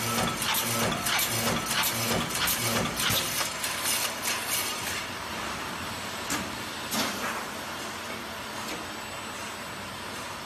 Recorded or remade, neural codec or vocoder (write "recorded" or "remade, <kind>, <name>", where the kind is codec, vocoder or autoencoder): recorded